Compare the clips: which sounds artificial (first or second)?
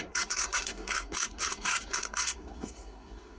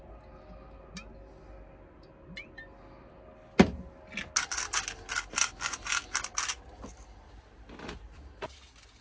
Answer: first